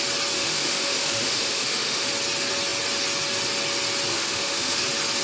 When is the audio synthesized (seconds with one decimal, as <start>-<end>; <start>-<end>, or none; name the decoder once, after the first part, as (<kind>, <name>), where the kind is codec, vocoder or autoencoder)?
0.4-2.1 (autoencoder, DAC-VAE); 4.1-4.8